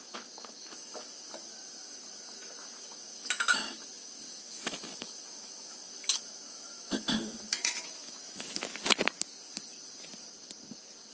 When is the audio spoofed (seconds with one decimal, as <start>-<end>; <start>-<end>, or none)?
0.0-8.6